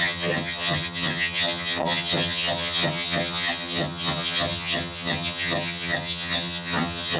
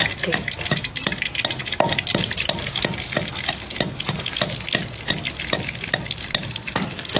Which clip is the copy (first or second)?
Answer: first